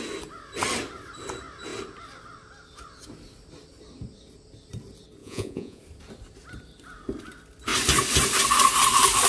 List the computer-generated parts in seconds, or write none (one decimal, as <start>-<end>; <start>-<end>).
5.2-5.8